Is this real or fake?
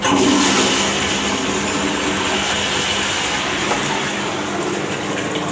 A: real